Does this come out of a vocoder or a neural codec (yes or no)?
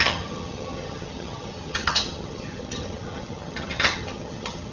yes